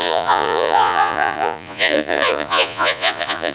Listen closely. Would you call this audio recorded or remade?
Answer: remade